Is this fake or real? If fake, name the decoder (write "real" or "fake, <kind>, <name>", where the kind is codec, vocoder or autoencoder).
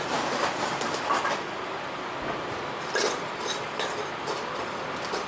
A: real